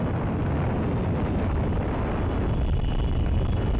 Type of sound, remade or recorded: recorded